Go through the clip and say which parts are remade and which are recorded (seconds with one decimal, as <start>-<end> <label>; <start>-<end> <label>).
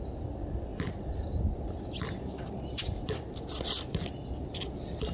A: 0.0-5.1 recorded